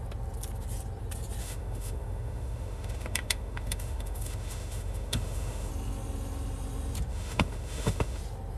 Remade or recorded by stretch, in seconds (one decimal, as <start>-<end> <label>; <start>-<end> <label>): 0.0-1.4 recorded; 1.4-5.7 remade; 5.7-7.1 recorded; 7.1-8.2 remade; 8.2-8.6 recorded